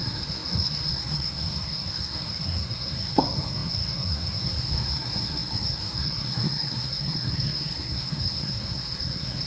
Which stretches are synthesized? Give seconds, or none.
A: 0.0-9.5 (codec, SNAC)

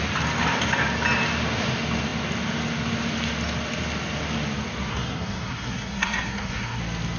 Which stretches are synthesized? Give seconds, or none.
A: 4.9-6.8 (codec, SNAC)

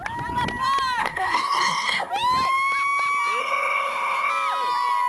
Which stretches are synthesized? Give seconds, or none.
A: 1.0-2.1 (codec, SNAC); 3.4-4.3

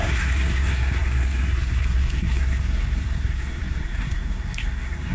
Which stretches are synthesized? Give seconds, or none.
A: 0.0-5.1 (codec, SNAC)

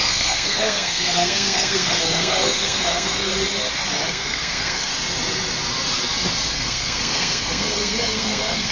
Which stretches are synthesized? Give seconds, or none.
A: 0.0-3.3 (codec, SNAC); 4.1-4.9; 6.5-8.7

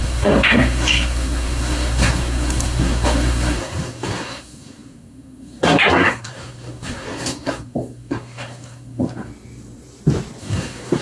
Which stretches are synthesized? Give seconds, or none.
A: 0.0-9.3 (codec, SNAC); 10.4-11.0